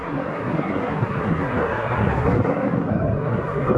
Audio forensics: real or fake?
fake